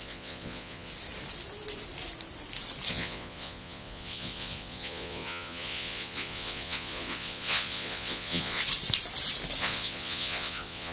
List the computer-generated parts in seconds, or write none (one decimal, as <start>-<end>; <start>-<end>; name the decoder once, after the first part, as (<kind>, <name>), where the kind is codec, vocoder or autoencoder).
0.0-0.9 (vocoder, Vocos); 2.9-8.6; 9.6-10.9